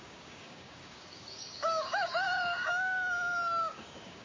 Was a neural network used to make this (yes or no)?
yes